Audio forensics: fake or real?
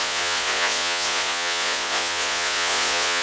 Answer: fake